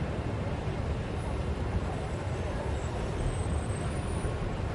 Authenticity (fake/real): fake